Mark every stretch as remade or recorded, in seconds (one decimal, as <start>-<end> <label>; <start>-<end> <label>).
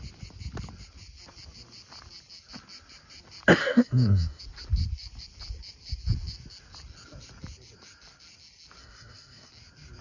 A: 0.0-3.6 recorded; 3.6-4.4 remade; 4.4-8.8 recorded; 8.8-9.5 remade; 9.5-10.0 recorded